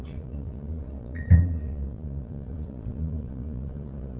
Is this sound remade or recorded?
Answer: remade